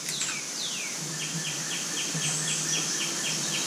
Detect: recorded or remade recorded